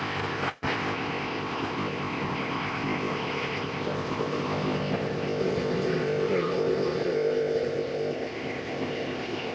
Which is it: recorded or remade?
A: remade